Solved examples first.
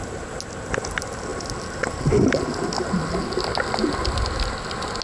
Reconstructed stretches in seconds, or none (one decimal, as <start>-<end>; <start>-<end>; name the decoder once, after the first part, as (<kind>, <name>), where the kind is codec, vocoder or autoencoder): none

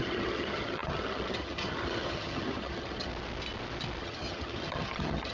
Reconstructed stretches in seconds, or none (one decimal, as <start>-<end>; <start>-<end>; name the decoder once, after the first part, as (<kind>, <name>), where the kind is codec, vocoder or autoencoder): 0.0-3.1 (vocoder, HiFi-GAN); 4.0-5.3

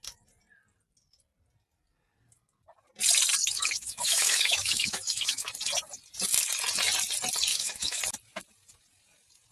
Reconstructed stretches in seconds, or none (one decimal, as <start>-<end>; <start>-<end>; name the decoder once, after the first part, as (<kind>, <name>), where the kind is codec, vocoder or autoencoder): 3.4-5.5 (autoencoder, DAC-VAE); 7.5-8.0

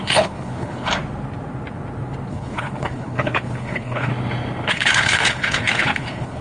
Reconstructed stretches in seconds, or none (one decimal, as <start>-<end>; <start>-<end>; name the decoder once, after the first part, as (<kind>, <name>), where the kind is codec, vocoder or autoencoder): 0.0-0.9 (codec, HILCodec); 2.3-4.1; 4.7-6.4

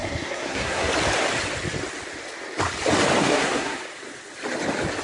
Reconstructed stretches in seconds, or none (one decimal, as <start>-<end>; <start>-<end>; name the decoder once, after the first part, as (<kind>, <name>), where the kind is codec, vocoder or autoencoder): 0.0-0.9 (codec, SNAC); 3.2-3.8

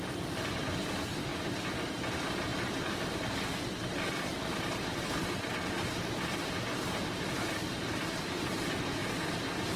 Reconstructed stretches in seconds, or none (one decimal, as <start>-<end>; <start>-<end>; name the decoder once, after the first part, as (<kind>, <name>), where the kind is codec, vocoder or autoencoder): none